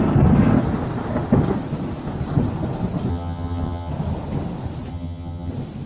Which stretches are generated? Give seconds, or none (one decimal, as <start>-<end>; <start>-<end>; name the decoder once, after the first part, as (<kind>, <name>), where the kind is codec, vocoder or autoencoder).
3.1-3.9 (vocoder, HiFi-GAN); 4.9-5.5